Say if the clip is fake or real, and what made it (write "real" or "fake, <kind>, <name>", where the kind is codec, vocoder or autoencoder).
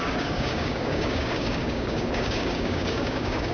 fake, codec, DAC